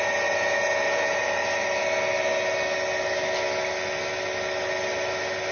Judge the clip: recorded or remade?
recorded